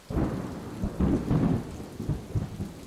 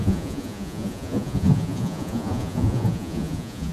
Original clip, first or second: first